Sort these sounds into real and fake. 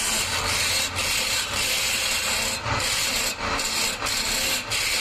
real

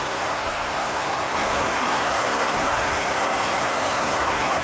fake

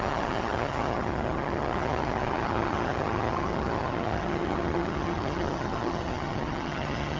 fake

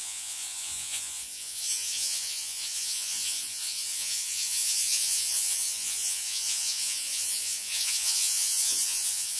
fake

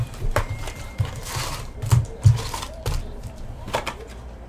fake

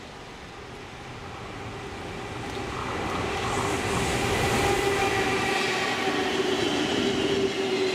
real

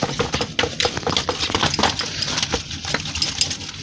real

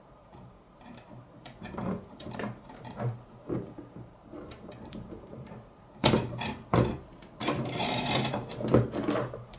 fake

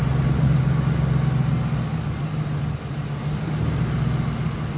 real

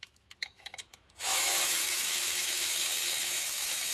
fake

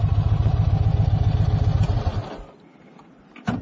real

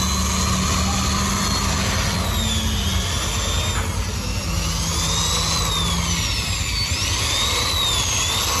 real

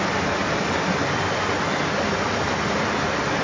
real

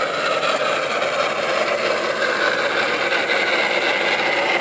real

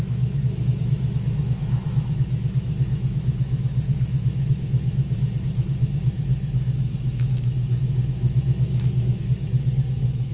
fake